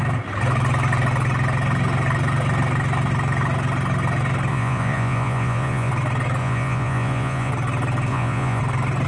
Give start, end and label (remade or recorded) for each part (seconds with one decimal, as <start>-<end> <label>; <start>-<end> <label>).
0.0-4.5 recorded; 4.5-5.9 remade; 5.9-6.4 recorded; 6.4-7.5 remade; 7.5-8.1 recorded; 8.1-8.6 remade; 8.6-9.1 recorded